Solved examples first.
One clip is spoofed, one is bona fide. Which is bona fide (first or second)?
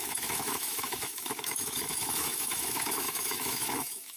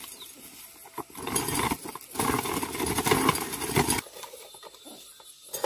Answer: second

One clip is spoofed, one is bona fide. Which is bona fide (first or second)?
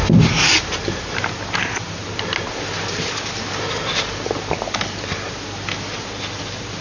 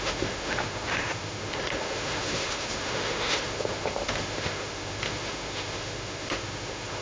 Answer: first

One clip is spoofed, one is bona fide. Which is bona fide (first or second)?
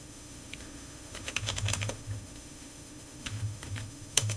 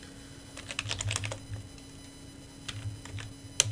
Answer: second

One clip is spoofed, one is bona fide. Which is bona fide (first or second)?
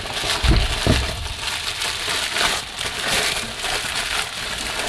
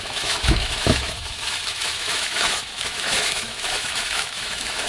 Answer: first